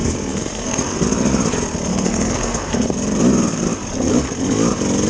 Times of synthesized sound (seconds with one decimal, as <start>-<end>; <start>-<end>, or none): 0.0-1.0; 1.9-2.7